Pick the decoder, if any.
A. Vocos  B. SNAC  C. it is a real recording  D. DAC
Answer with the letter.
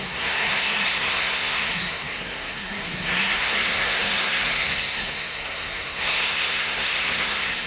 B